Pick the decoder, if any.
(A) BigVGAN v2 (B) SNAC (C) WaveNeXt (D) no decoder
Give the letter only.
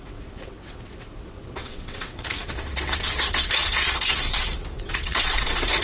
C